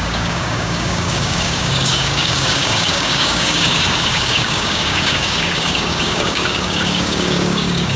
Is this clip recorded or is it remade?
remade